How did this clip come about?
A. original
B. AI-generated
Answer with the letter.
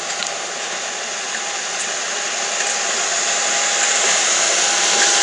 A